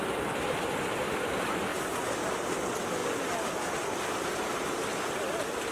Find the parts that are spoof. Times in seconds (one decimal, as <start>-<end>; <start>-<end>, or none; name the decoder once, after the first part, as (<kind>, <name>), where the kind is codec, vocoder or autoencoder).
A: none